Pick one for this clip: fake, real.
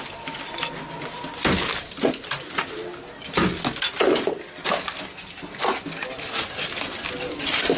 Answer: real